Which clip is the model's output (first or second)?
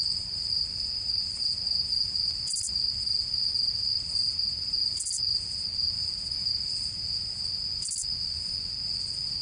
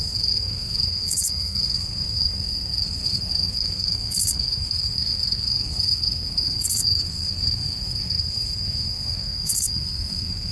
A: second